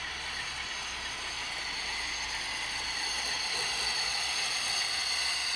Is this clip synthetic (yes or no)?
no